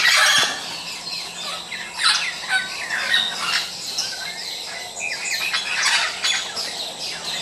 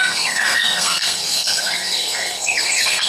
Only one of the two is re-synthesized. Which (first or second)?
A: second